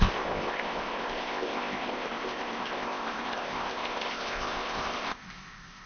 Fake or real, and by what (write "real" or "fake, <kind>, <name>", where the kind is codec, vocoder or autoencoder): fake, codec, ZipCodec